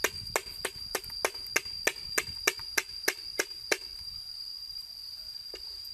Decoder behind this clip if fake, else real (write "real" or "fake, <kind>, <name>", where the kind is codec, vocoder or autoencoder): real